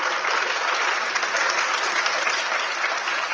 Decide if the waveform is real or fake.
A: real